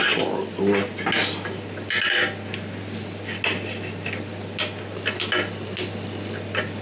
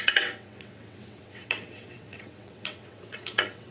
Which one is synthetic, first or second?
second